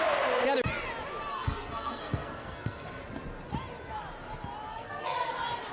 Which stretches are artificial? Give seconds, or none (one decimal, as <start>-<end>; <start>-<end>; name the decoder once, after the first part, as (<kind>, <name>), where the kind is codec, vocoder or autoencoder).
1.3-3.0 (codec, SNAC); 4.7-5.3